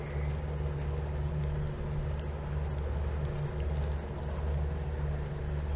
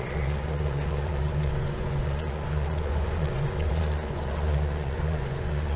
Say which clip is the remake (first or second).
second